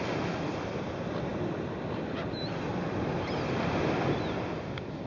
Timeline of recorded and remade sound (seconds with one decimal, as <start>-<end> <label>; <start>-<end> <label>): 0.0-5.1 recorded